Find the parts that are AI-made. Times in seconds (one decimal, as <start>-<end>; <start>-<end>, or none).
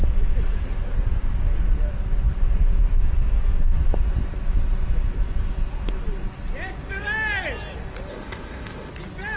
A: 8.1-8.9